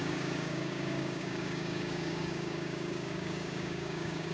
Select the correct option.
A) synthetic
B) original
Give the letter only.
A